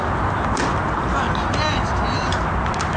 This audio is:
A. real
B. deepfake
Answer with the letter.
A